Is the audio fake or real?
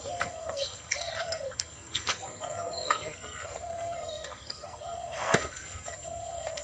fake